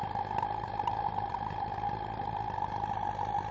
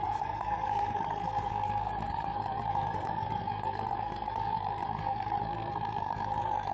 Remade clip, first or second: second